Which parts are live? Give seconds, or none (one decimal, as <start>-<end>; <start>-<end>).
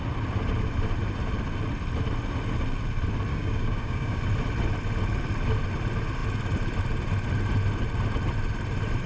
0.0-3.3; 4.2-9.1